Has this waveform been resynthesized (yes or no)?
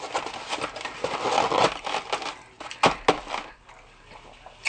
no